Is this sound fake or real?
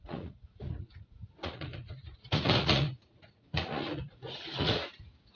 fake